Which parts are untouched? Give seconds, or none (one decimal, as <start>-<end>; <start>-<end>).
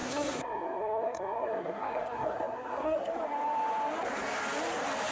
3.1-5.1